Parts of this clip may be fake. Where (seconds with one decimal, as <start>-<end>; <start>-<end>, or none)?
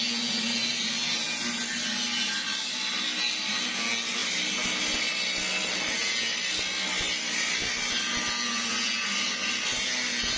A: none